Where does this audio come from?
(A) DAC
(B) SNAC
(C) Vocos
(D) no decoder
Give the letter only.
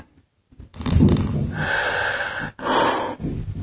D